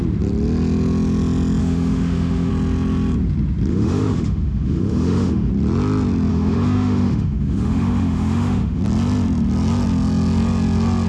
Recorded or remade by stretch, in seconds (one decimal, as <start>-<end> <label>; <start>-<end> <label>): 0.0-1.6 recorded; 1.6-2.5 remade; 2.5-3.7 recorded; 3.7-5.5 remade; 5.5-6.3 recorded; 6.3-8.8 remade; 8.8-11.1 recorded